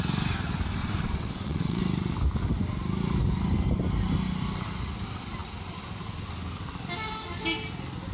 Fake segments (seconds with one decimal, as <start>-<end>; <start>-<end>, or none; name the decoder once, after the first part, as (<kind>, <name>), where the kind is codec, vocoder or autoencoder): 0.8-1.8 (vocoder, WaveNeXt)